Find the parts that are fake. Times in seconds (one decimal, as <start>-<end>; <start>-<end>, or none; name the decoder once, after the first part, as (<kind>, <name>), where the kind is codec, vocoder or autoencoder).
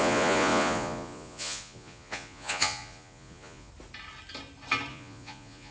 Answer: 0.0-3.7 (vocoder, Vocos); 4.9-5.7